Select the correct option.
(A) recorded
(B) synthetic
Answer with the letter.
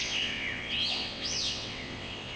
B